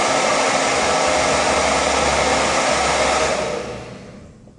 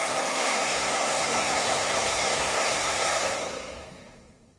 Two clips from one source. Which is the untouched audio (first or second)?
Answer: first